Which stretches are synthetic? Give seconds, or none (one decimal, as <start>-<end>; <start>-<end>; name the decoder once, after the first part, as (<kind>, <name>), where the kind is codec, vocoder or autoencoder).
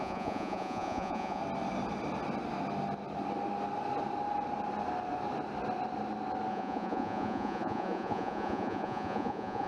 0.0-1.4 (vocoder, Vocos); 6.5-9.7